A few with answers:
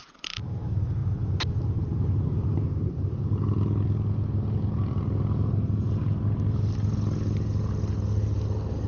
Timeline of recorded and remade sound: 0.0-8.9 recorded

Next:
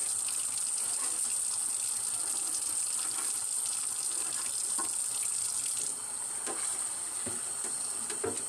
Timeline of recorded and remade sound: 0.0-2.8 recorded; 2.8-4.7 remade; 4.7-8.5 recorded

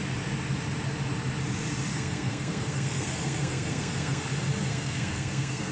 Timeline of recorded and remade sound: 0.0-1.9 recorded; 1.9-4.3 remade; 4.3-4.7 recorded; 4.7-5.7 remade

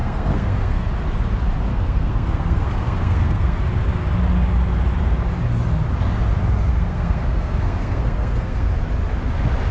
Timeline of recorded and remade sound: 0.0-0.9 remade; 0.9-1.7 recorded; 1.7-3.6 remade; 3.6-6.7 recorded; 6.7-8.7 remade; 8.7-9.7 recorded

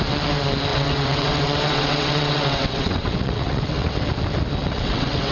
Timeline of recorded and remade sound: 0.0-0.7 recorded; 0.7-3.9 remade; 3.9-4.6 recorded; 4.6-5.3 remade